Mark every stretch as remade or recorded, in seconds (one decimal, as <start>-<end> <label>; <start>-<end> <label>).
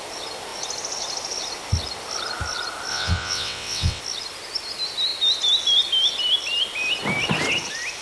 0.0-2.9 recorded; 2.9-4.0 remade; 4.0-8.0 recorded